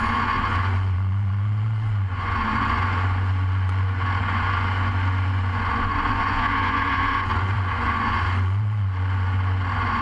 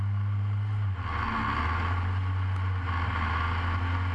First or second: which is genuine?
second